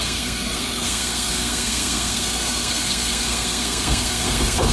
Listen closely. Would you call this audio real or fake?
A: fake